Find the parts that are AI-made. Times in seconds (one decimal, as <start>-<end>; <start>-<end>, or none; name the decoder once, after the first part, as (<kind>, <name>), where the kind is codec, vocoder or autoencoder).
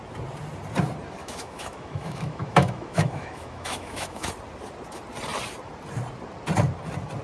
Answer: 1.2-4.3 (autoencoder, DAC-VAE)